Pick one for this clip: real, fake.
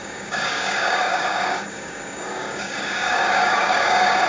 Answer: fake